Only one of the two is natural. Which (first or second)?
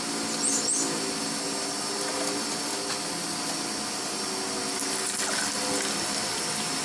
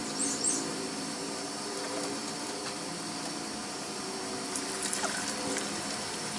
first